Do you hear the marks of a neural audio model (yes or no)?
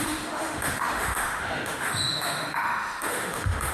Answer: yes